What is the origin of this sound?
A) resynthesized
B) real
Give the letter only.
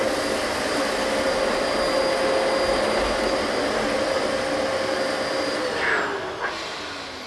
B